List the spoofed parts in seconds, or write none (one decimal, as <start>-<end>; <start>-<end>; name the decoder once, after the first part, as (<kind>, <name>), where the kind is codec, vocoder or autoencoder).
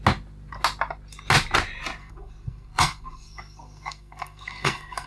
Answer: 2.0-5.1 (codec, SNAC)